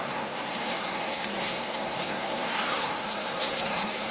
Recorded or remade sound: remade